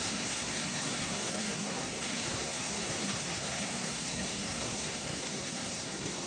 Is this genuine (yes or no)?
no